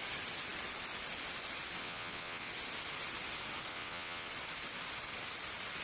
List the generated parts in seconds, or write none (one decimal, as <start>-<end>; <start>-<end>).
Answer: 1.8-2.5; 3.7-4.3